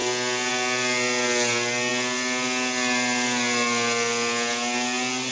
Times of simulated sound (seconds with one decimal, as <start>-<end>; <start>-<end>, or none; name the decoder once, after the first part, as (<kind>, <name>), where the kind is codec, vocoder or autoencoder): none